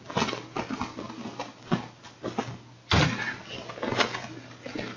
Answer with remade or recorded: recorded